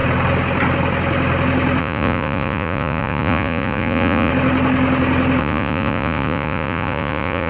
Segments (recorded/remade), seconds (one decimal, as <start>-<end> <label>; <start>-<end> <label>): 0.0-1.8 recorded; 1.8-4.3 remade; 4.3-5.4 recorded; 5.4-7.5 remade